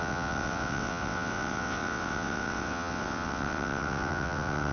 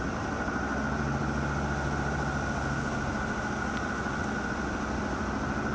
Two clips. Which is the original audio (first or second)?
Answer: second